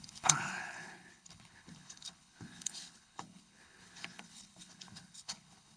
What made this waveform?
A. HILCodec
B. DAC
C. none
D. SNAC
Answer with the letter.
A